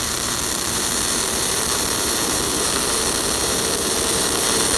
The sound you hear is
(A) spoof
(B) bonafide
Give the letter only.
A